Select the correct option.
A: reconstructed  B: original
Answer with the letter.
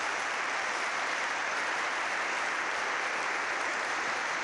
B